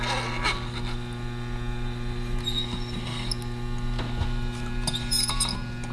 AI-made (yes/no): no